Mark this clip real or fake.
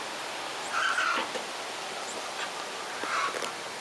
real